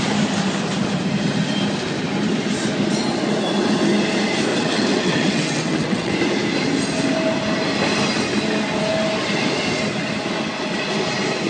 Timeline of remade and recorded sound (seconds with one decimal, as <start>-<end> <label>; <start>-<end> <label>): 0.0-4.5 recorded; 4.5-6.1 remade; 6.1-11.5 recorded